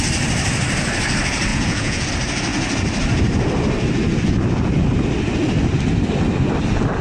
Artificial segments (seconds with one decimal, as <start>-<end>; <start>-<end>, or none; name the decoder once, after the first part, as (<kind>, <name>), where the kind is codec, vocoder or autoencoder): 1.5-2.1 (vocoder, Vocos)